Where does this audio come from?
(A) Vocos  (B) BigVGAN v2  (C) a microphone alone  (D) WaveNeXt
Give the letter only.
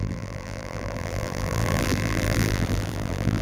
B